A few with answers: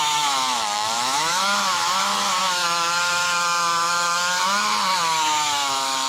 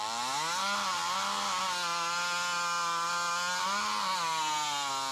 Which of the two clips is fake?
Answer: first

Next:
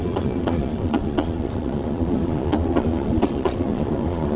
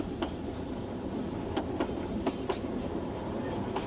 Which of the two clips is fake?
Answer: first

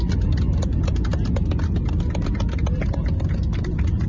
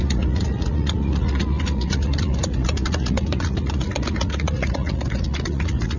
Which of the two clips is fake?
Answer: second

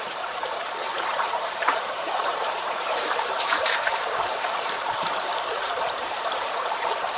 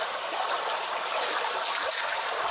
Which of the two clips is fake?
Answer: first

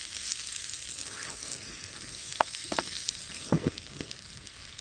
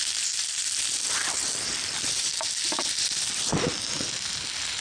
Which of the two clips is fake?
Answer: first